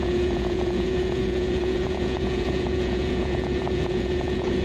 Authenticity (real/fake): fake